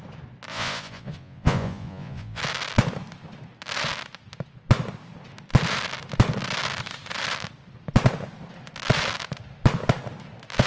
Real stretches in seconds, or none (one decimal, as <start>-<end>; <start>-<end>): 0.0-0.5; 2.4-10.7